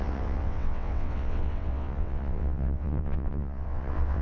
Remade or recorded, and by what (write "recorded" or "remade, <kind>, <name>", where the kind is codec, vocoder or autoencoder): remade, vocoder, WaveNeXt